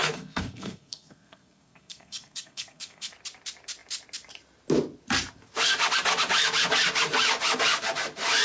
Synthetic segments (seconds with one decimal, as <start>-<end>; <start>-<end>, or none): 0.0-3.1